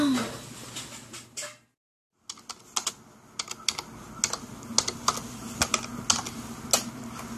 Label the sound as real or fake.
real